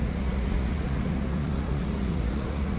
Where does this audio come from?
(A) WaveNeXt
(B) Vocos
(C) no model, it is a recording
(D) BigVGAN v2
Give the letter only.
B